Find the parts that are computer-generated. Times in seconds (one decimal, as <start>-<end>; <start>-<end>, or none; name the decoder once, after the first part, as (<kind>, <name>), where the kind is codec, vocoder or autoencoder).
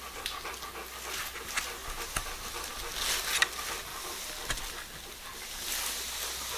none